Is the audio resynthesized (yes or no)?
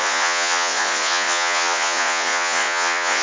yes